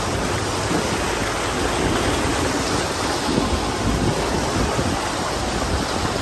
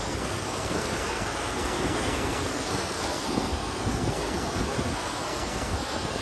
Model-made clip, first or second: second